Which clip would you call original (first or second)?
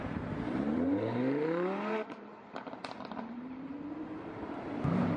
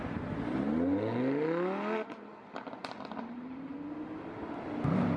second